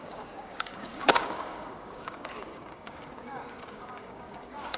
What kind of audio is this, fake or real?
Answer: fake